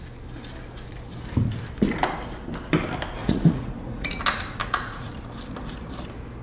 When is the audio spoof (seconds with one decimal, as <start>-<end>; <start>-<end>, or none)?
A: 3.2-4.1; 4.6-5.1